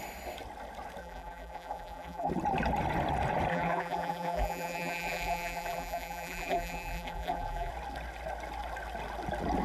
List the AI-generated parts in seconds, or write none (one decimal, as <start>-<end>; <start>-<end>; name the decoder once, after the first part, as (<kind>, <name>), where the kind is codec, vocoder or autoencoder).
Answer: 1.0-2.3 (vocoder, BigVGAN v2); 3.5-7.7